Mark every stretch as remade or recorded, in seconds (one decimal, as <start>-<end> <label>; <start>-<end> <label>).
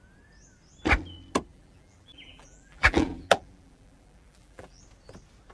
0.0-1.5 recorded; 1.5-4.8 remade; 4.8-5.5 recorded